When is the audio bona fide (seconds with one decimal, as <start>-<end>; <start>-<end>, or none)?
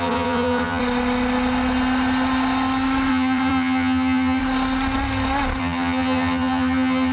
0.8-3.1; 4.4-5.6